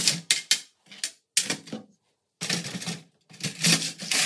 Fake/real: real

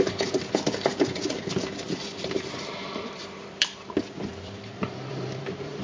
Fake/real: fake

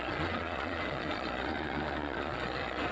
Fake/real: fake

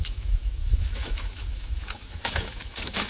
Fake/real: fake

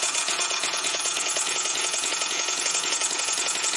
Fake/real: fake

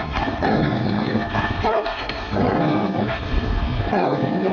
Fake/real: fake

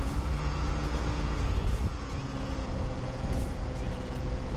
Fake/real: fake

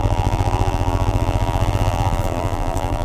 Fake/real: fake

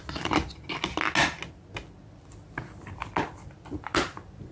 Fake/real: real